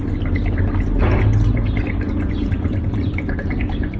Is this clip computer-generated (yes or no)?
no